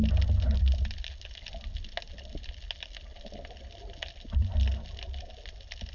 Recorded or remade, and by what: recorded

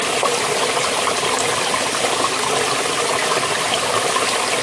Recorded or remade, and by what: recorded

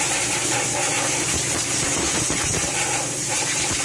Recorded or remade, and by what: remade, vocoder, BigVGAN v2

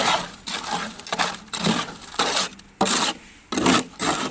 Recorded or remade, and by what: recorded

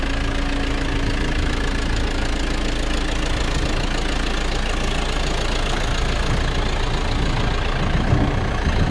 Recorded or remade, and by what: recorded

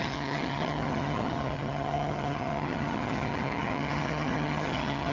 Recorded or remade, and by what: remade, vocoder, HiFi-GAN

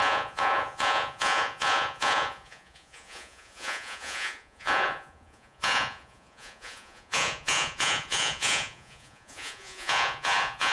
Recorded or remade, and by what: remade, vocoder, Vocos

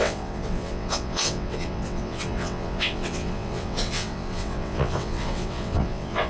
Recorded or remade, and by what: remade, vocoder, WaveNeXt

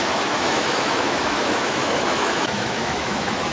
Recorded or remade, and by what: remade, autoencoder, DAC-VAE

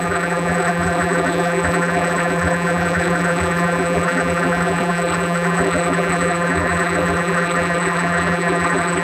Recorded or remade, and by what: remade, vocoder, BigVGAN v2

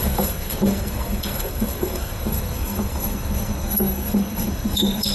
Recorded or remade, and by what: remade, codec, SNAC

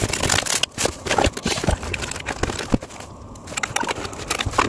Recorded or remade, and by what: recorded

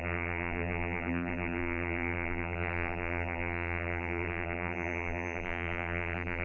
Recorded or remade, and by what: remade, vocoder, BigVGAN v2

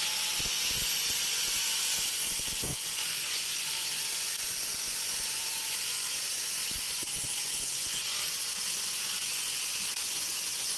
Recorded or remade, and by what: remade, vocoder, Vocos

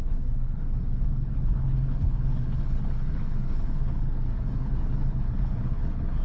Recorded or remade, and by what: remade, codec, HILCodec